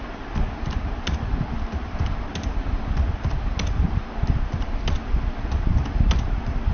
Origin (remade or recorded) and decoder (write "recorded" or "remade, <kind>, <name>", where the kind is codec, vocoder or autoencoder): recorded